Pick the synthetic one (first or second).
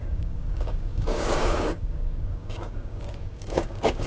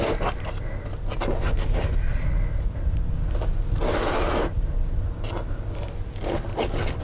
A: first